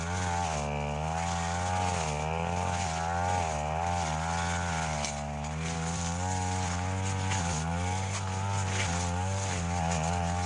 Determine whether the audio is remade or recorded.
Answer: recorded